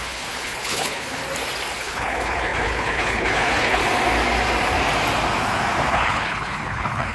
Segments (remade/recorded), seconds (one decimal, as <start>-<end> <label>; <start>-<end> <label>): 0.0-1.2 remade; 1.2-1.8 recorded; 1.8-3.8 remade; 3.8-5.9 recorded; 5.9-7.1 remade